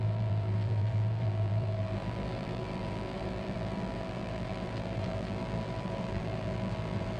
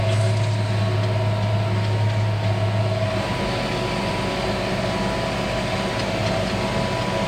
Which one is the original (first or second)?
second